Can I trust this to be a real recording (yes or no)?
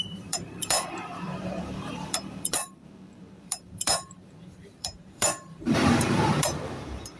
no